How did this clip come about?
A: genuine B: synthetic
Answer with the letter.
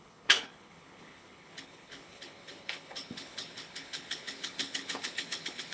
B